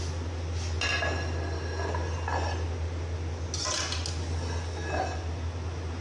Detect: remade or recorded recorded